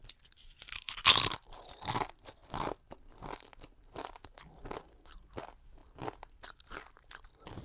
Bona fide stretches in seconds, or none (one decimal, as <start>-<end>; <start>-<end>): 0.0-7.6